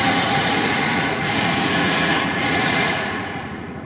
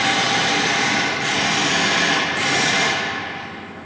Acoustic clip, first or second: second